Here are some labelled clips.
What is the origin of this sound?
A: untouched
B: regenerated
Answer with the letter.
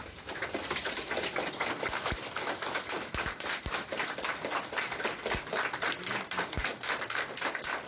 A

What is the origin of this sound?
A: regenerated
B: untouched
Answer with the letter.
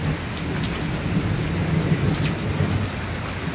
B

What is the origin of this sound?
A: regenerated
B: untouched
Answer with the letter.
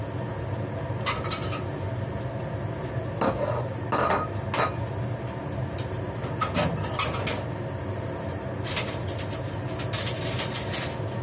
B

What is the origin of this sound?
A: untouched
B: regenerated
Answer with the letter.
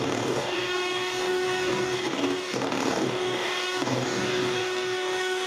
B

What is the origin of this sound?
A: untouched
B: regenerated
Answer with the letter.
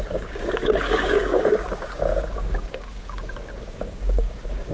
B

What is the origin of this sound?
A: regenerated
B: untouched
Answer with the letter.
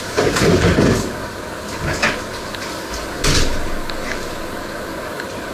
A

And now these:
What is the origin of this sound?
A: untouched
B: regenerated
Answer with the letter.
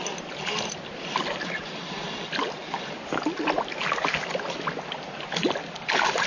A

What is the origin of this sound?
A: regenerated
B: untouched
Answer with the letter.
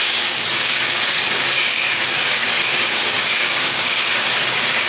A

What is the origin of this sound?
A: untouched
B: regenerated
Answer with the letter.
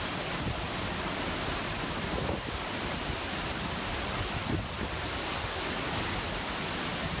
A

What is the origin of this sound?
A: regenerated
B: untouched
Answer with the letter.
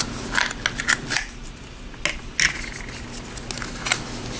B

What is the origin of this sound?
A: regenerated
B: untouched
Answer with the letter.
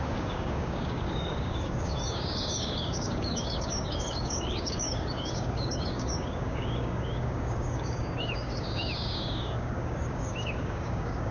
A